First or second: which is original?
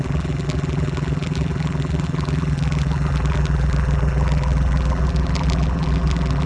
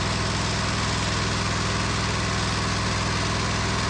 second